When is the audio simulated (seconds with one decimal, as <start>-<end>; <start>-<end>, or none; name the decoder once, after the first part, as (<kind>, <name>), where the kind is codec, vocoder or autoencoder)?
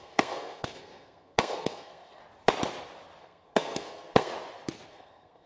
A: 0.0-2.2 (codec, SNAC); 3.2-4.3; 4.9-5.5